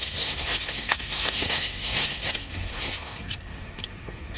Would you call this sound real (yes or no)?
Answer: no